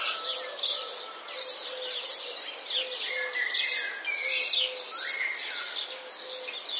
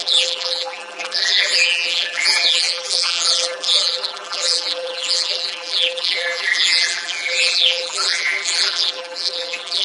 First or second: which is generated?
second